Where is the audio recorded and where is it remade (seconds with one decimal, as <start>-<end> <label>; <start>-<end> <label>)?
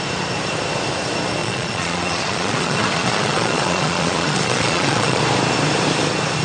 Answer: 0.0-1.4 recorded; 1.4-5.2 remade; 5.2-6.4 recorded